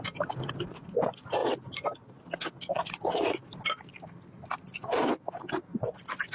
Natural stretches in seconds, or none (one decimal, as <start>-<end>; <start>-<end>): 0.0-6.3